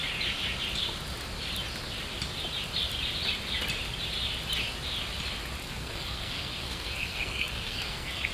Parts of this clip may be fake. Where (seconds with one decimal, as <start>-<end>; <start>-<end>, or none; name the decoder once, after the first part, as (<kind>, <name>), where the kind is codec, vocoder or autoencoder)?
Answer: 5.6-8.3 (codec, SNAC)